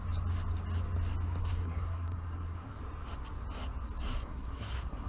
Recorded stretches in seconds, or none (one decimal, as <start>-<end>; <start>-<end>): 0.0-1.4; 2.8-4.1